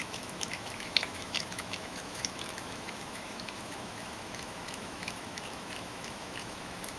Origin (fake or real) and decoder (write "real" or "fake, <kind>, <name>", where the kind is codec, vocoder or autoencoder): fake, autoencoder, DAC-VAE